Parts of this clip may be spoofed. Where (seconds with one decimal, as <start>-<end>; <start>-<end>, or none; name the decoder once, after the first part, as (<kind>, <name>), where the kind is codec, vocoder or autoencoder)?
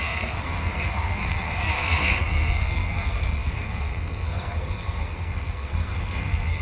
0.0-6.6 (codec, SNAC)